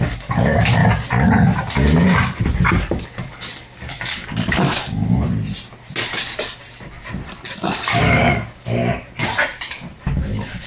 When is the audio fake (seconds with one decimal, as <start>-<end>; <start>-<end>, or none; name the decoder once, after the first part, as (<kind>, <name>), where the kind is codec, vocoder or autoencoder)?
0.0-0.8 (codec, DAC); 2.7-5.0; 7.7-8.8; 9.7-10.7

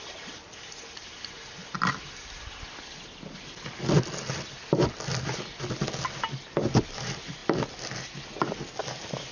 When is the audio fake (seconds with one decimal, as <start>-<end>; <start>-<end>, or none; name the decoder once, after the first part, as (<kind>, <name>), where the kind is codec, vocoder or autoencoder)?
none

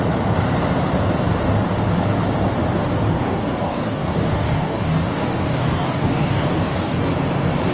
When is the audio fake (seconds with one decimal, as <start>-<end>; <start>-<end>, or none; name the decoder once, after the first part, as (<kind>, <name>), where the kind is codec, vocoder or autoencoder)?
3.2-7.1 (codec, DAC)

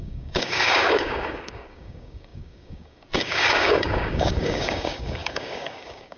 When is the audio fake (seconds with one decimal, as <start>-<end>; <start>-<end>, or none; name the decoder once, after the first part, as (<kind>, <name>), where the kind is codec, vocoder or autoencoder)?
0.0-6.2 (codec, DAC)

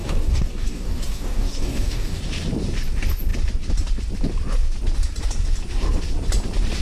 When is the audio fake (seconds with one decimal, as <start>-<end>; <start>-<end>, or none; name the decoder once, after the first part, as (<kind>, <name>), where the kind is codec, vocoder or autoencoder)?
0.0-2.2 (codec, DAC)

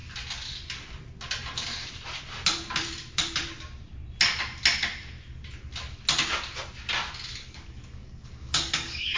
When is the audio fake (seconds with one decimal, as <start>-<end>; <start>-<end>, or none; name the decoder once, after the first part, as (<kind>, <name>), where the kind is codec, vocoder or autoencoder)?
7.3-9.2 (codec, DAC)